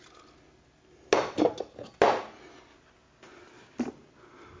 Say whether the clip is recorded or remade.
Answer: recorded